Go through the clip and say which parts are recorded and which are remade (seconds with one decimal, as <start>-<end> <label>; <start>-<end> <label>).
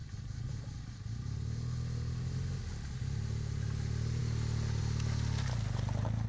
0.0-6.3 recorded